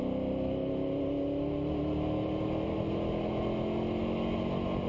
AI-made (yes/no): no